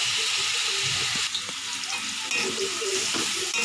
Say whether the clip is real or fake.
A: real